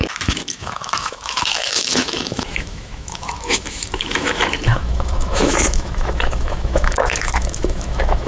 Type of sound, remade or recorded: remade